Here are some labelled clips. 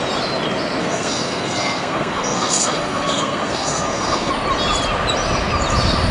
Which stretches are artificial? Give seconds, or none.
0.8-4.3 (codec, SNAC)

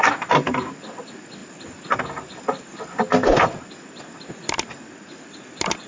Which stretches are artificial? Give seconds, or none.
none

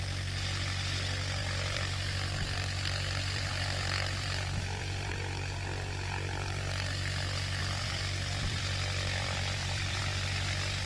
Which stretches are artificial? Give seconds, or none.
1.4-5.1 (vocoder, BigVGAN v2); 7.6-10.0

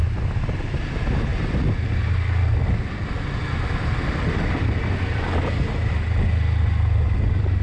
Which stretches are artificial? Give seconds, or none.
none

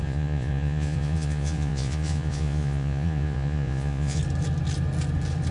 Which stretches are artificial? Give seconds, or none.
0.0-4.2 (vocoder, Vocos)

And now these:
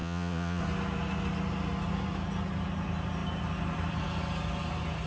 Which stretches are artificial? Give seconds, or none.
0.0-0.6 (vocoder, Vocos)

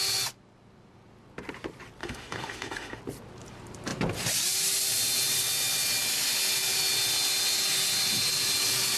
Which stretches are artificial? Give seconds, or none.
2.0-3.0 (autoencoder, DAC-VAE)